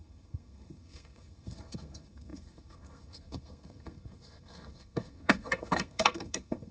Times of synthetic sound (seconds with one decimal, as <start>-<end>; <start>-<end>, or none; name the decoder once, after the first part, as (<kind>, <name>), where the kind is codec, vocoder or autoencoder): 0.0-6.7 (codec, SNAC)